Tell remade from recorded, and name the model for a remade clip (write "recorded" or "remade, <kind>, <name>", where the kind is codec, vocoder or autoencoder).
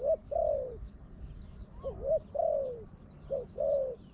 recorded